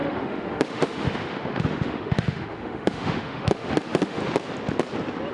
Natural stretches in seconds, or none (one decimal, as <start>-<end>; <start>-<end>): 4.2-5.3